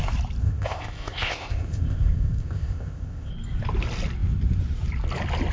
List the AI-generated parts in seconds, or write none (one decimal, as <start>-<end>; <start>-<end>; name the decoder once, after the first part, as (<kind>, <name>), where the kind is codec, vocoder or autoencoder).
0.4-3.3 (codec, ZipCodec)